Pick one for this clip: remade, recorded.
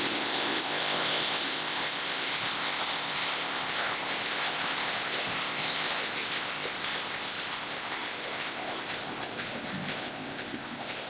remade